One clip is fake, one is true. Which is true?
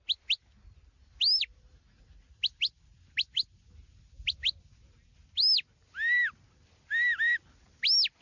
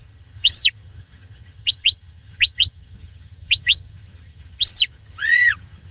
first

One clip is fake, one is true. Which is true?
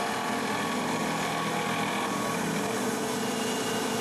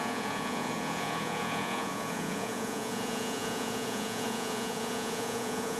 first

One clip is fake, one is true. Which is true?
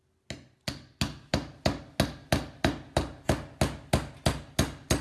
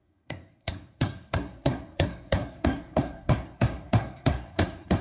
first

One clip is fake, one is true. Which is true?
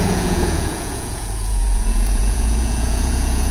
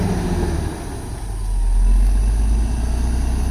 second